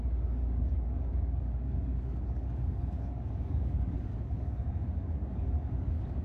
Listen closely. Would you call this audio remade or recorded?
remade